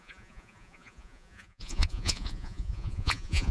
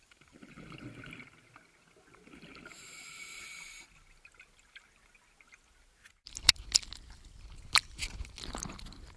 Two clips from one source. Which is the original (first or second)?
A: second